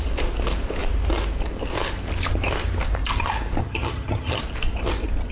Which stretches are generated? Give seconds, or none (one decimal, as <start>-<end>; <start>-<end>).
3.6-4.4